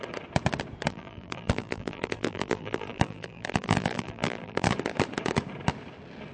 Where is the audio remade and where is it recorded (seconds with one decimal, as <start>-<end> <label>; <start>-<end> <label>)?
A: 0.0-0.9 recorded; 0.9-4.7 remade; 4.7-6.3 recorded